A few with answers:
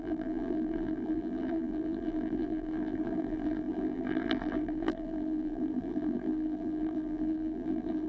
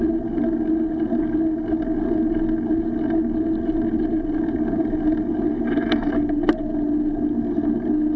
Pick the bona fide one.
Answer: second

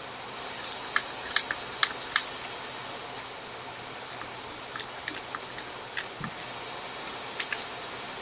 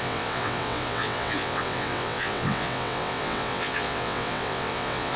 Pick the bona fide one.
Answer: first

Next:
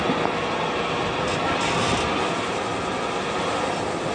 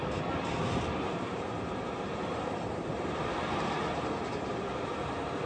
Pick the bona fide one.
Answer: first